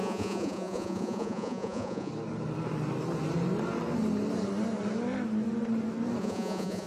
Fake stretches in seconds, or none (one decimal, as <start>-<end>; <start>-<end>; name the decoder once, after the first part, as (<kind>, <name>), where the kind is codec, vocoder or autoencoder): 0.0-2.1 (vocoder, Vocos); 6.2-6.9